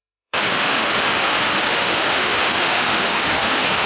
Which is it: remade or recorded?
remade